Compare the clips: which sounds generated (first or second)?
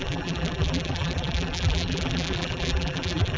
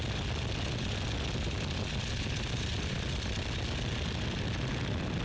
first